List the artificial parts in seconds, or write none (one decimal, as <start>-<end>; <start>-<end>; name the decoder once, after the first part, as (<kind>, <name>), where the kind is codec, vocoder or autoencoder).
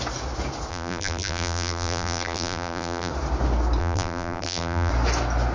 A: 0.7-3.1 (vocoder, BigVGAN v2); 3.8-4.9